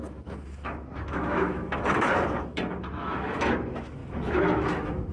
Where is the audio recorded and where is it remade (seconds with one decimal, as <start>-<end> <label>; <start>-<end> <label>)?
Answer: 0.0-5.1 remade